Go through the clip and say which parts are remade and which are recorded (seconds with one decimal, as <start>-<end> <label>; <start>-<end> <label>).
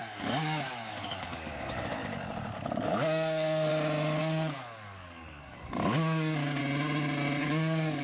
0.0-3.7 remade; 3.7-4.2 recorded; 4.2-6.6 remade; 6.6-7.4 recorded; 7.4-8.0 remade